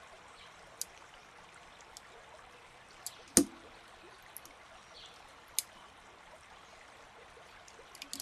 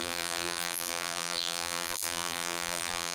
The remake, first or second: second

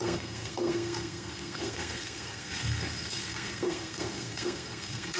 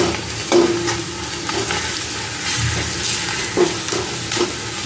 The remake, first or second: first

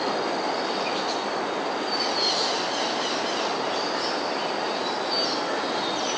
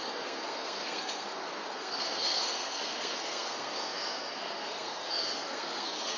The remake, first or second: second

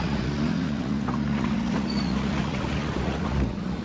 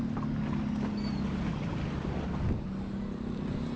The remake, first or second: first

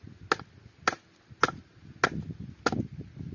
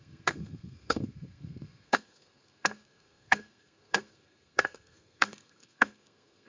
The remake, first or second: second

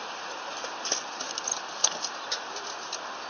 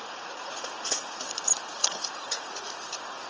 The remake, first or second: second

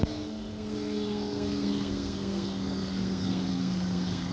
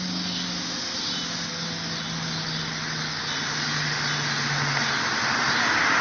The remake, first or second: first